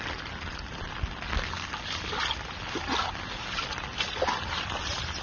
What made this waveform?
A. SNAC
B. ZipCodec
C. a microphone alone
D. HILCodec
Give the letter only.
C